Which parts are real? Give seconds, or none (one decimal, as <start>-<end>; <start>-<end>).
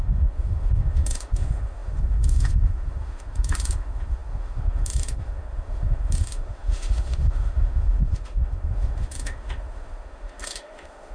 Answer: none